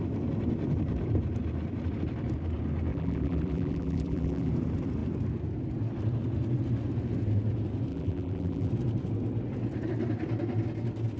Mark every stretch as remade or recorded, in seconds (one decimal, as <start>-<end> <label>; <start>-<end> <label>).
0.0-2.9 recorded; 2.9-4.5 remade; 4.5-7.9 recorded; 7.9-8.7 remade; 8.7-11.2 recorded